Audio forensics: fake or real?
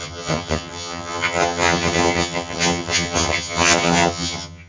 fake